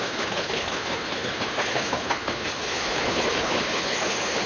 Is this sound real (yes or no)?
no